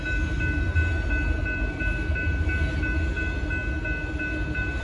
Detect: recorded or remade recorded